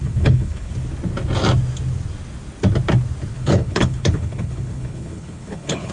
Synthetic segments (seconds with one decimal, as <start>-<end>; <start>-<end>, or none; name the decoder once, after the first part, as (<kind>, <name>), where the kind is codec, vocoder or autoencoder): 0.0-0.7 (codec, HILCodec); 3.3-5.9